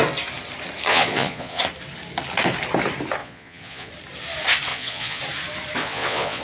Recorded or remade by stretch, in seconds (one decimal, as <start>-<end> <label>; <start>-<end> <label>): 0.0-0.9 recorded; 0.9-1.6 remade; 1.6-3.2 recorded; 3.2-3.9 remade; 3.9-4.7 recorded; 4.7-5.2 remade; 5.2-5.8 recorded; 5.8-6.4 remade